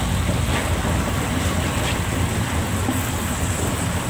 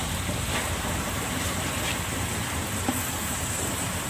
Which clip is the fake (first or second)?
second